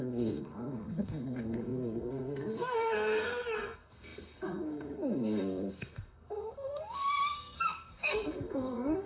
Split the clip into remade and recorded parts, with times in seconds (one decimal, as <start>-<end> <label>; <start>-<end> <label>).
0.0-9.1 remade